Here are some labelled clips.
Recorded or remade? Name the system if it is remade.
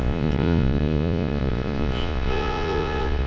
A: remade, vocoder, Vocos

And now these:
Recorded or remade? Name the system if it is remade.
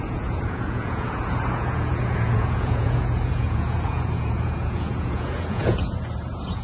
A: remade, vocoder, Vocos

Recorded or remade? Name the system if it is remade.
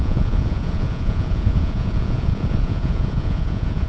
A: remade, vocoder, Vocos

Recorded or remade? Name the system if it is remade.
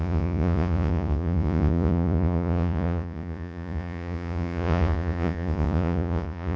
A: remade, vocoder, Vocos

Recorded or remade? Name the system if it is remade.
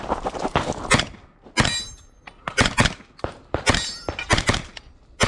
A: recorded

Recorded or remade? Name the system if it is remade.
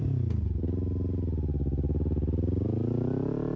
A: recorded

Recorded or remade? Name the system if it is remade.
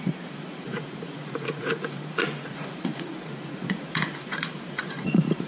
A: remade, vocoder, Vocos